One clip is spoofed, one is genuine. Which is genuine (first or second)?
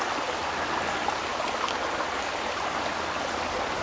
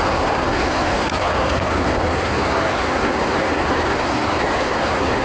first